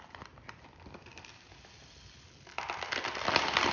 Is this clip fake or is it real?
real